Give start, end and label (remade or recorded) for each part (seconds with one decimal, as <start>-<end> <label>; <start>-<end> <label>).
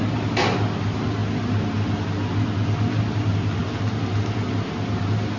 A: 0.0-5.4 recorded